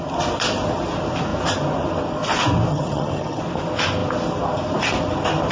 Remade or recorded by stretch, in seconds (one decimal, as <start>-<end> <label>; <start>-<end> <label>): 0.0-2.7 recorded; 2.7-3.4 remade; 3.4-5.5 recorded